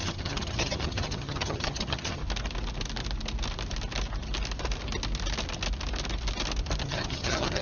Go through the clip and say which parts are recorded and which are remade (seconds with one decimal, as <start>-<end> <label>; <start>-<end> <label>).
0.0-2.2 remade; 2.2-6.8 recorded; 6.8-7.6 remade